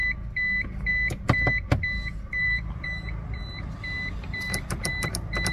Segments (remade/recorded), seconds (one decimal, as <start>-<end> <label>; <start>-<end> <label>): 0.0-2.4 recorded; 2.4-4.9 remade; 4.9-5.5 recorded